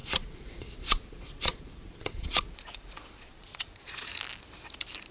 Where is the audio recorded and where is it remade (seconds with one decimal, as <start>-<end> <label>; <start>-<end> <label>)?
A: 0.0-4.1 remade; 4.1-5.1 recorded